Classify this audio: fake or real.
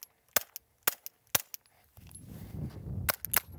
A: real